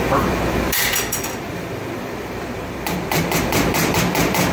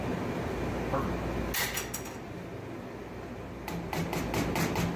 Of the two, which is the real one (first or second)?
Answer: second